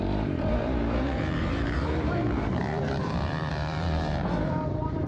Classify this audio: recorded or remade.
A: remade